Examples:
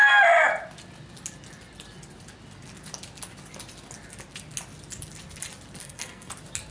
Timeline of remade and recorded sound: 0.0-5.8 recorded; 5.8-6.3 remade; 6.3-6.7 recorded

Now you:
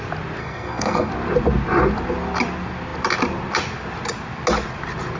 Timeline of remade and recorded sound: 0.0-0.4 recorded; 0.4-1.1 remade; 1.1-5.2 recorded

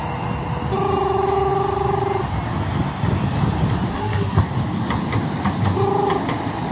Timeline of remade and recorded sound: 0.0-3.9 recorded; 3.9-4.4 remade; 4.4-6.7 recorded

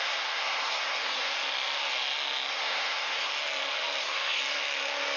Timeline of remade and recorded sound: 0.0-1.3 remade; 1.3-2.5 recorded; 2.5-3.3 remade; 3.3-4.0 recorded; 4.0-4.4 remade; 4.4-5.2 recorded

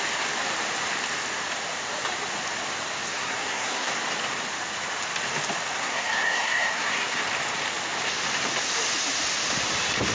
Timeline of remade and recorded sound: 0.0-3.1 recorded; 3.1-3.9 remade; 3.9-5.7 recorded; 5.7-7.2 remade; 7.2-10.1 recorded

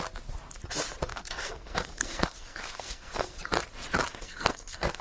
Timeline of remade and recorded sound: 0.0-1.1 recorded; 1.1-3.4 remade; 3.4-4.1 recorded; 4.1-5.0 remade

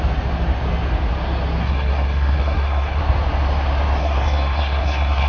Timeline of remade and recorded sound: 0.0-1.6 recorded; 1.6-3.0 remade; 3.0-4.0 recorded; 4.0-5.3 remade